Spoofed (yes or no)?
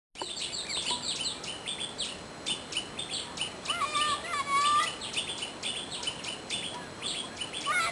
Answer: no